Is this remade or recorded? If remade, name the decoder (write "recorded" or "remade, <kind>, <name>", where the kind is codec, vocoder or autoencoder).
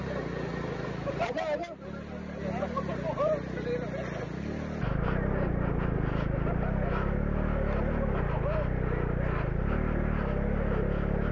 recorded